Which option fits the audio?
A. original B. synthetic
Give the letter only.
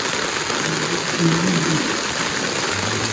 A